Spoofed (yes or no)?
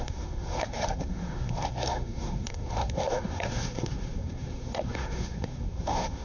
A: yes